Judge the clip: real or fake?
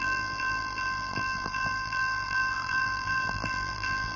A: fake